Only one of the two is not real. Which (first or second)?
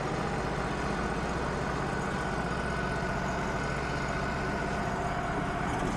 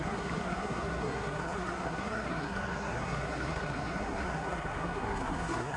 second